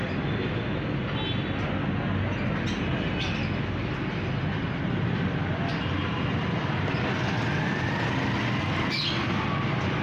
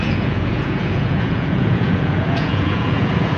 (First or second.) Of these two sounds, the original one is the first